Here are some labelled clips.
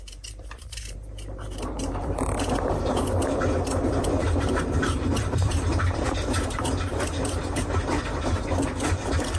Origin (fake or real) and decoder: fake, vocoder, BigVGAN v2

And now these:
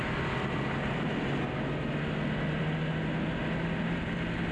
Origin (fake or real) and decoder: real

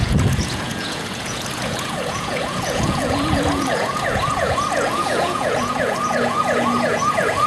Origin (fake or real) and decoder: fake, vocoder, Vocos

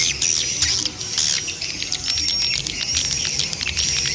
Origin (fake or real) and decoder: real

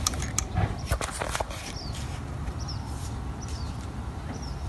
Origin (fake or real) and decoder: fake, vocoder, BigVGAN v2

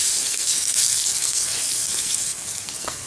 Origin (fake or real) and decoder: fake, codec, SNAC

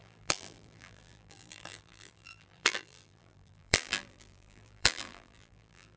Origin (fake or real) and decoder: fake, vocoder, BigVGAN v2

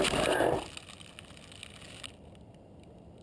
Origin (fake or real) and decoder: real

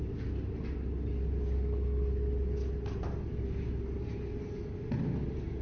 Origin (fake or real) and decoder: real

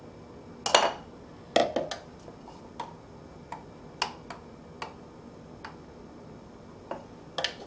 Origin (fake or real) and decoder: real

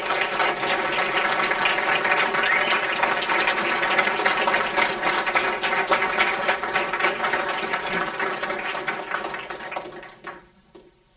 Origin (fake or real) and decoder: real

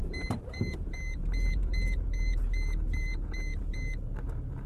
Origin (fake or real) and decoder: fake, vocoder, BigVGAN v2